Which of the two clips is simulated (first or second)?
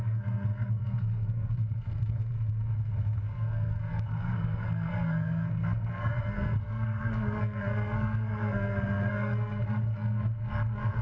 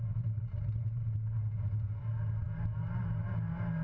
first